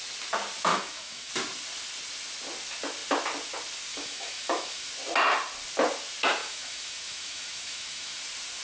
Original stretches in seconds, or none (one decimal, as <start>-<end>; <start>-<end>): 0.0-0.7; 1.3-3.9; 4.9-6.4; 8.2-8.6